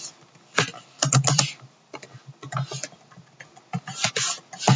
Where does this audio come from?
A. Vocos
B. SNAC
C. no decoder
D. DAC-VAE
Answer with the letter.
C